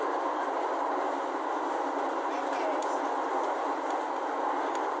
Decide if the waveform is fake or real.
real